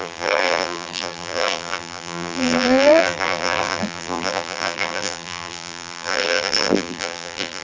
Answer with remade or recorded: remade